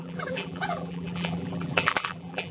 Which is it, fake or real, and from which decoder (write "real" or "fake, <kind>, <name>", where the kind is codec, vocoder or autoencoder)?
fake, vocoder, BigVGAN v2